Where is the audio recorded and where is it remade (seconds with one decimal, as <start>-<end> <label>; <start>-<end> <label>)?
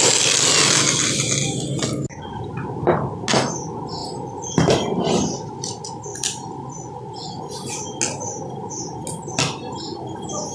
0.0-4.0 recorded; 4.0-5.0 remade; 5.0-6.1 recorded; 6.1-7.4 remade; 7.4-10.5 recorded